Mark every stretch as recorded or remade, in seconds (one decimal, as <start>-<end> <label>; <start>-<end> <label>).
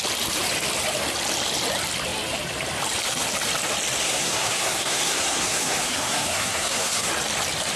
0.0-4.0 recorded; 4.0-7.1 remade; 7.1-7.8 recorded